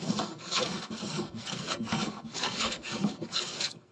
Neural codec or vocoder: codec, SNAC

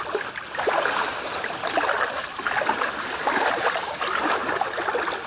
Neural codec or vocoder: none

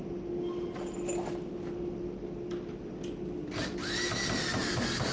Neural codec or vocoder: none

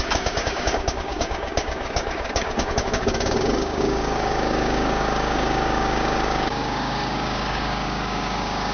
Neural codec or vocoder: codec, DAC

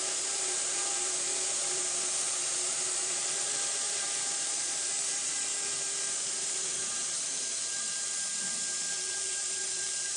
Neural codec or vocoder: vocoder, BigVGAN v2